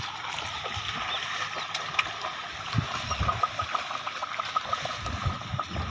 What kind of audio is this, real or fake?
real